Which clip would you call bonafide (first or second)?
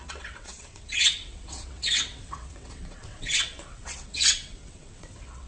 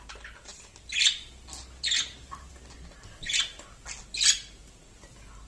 second